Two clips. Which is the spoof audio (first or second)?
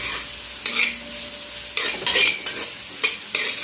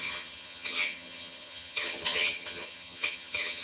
second